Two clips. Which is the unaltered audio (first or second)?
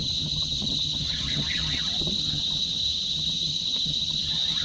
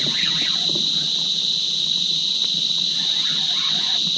second